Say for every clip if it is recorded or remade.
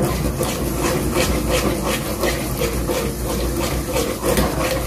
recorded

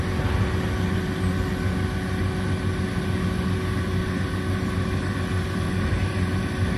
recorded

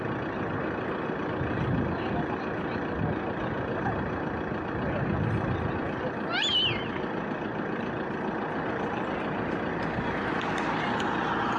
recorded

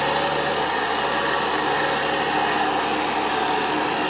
recorded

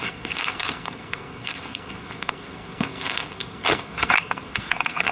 remade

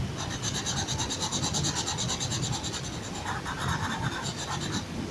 recorded